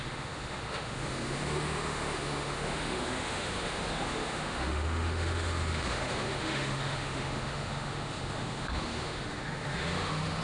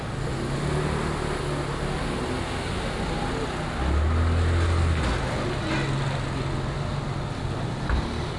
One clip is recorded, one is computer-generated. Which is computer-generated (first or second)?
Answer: first